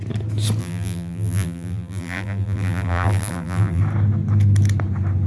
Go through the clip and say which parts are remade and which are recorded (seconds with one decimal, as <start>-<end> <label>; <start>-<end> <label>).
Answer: 0.0-0.6 recorded; 0.6-3.8 remade; 3.8-5.3 recorded